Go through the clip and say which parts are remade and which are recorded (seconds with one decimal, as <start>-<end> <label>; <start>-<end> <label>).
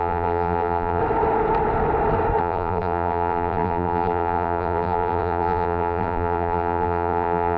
0.0-1.0 remade; 1.0-2.4 recorded; 2.4-7.6 remade